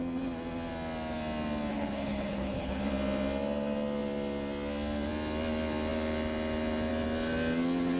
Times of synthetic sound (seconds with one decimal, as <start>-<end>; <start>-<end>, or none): 1.7-2.8